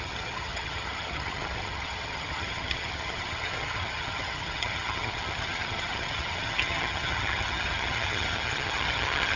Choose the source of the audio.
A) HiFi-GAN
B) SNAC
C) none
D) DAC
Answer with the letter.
A